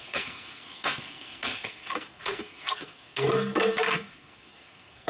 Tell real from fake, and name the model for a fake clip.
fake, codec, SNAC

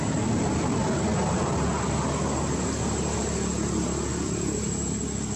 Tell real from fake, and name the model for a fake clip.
real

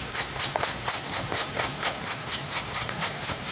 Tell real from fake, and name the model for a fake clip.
fake, codec, SNAC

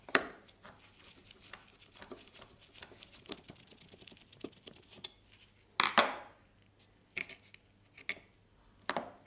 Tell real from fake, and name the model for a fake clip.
real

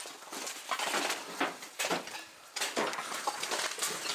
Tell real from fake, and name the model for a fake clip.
real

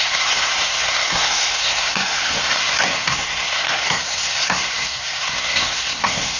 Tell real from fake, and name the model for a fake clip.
fake, codec, SNAC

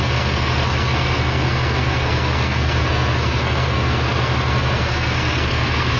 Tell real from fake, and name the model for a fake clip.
fake, codec, SNAC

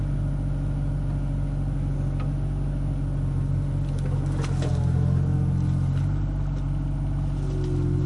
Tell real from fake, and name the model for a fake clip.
real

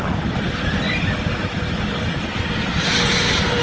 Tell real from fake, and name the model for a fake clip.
real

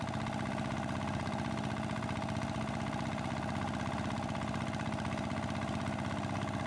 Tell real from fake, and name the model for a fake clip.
real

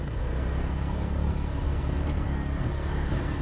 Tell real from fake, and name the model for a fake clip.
fake, codec, SNAC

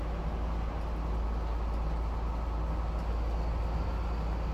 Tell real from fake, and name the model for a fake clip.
real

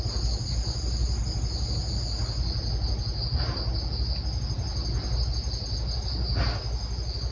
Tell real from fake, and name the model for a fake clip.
real